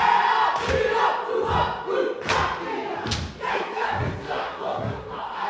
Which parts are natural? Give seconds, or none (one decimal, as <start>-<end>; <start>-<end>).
0.0-3.5